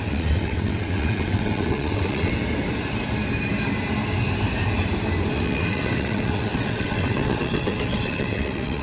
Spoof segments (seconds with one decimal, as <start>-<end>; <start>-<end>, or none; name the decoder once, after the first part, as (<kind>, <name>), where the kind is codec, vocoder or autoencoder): 0.0-2.3 (vocoder, WaveNeXt); 5.3-8.8